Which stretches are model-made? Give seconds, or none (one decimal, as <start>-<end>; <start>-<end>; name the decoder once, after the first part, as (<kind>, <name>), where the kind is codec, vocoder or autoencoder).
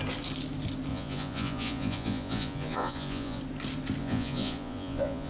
0.9-3.4 (vocoder, Vocos); 4.0-5.3